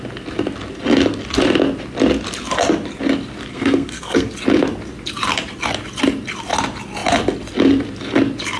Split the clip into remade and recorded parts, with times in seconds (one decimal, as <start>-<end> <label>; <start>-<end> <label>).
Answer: 0.0-3.5 recorded; 3.5-4.3 remade; 4.3-8.6 recorded